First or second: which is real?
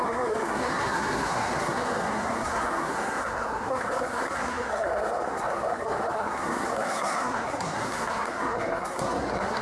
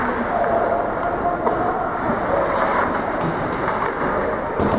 second